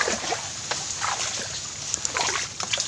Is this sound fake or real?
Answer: real